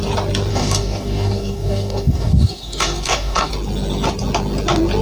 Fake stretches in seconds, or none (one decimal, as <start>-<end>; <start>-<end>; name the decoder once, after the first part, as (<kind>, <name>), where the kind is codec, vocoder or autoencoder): 0.5-3.5 (codec, DAC)